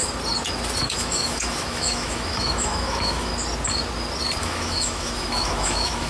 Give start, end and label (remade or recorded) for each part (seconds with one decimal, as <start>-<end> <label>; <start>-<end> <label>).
0.0-0.8 recorded; 0.8-3.3 remade; 3.3-4.4 recorded; 4.4-6.1 remade